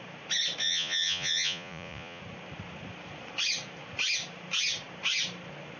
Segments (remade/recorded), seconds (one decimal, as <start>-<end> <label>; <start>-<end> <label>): 0.0-0.6 recorded; 0.6-2.2 remade; 2.2-5.8 recorded

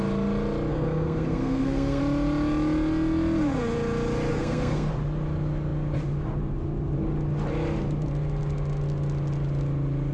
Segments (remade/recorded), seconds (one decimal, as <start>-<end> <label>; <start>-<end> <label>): 0.0-0.7 recorded; 0.7-2.0 remade; 2.0-4.3 recorded; 4.3-4.9 remade; 4.9-10.1 recorded

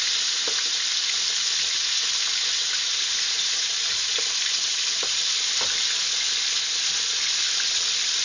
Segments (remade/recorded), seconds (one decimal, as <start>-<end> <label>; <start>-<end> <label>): 0.0-2.6 recorded; 2.6-4.1 remade; 4.1-8.2 recorded

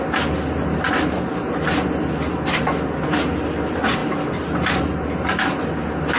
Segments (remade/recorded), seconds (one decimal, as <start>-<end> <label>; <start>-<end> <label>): 0.0-6.2 recorded

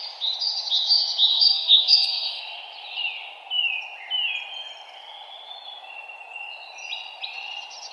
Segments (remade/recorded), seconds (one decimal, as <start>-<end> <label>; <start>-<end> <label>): 0.0-1.3 recorded; 1.3-2.4 remade; 2.4-7.9 recorded